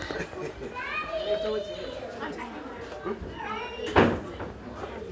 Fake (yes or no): no